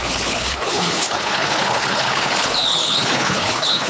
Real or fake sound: fake